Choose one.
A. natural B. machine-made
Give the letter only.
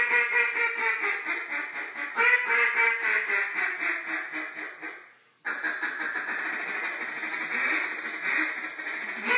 A